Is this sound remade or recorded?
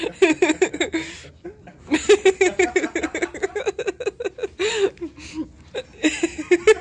recorded